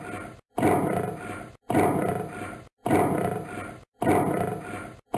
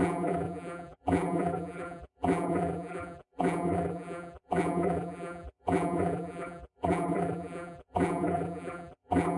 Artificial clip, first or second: second